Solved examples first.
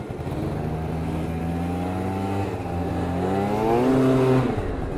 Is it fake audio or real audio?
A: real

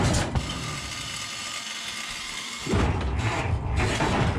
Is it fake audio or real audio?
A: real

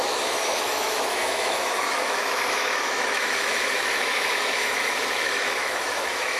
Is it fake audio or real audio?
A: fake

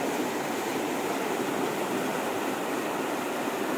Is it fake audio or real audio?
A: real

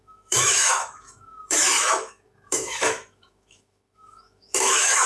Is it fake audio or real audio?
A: fake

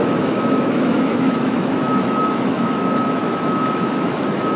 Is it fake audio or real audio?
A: fake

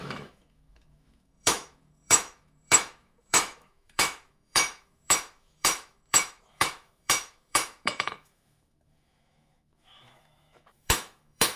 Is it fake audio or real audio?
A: fake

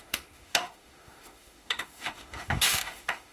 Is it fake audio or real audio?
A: fake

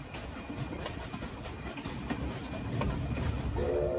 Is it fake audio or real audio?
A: real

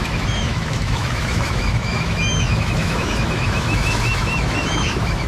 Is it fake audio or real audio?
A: fake